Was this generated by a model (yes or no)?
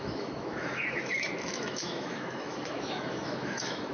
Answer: yes